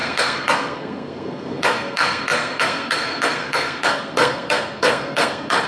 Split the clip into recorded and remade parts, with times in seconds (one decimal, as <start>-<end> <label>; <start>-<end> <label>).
0.0-5.7 remade